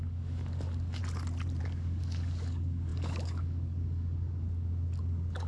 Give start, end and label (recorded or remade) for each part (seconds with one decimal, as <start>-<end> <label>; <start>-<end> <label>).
0.0-1.0 remade; 1.0-1.6 recorded; 1.6-5.5 remade

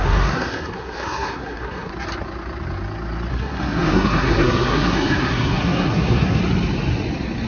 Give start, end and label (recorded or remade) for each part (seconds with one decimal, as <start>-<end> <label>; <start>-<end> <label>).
0.0-1.9 remade; 1.9-3.3 recorded; 3.3-6.4 remade; 6.4-7.5 recorded